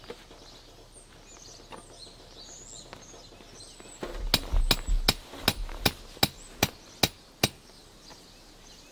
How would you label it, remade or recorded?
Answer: recorded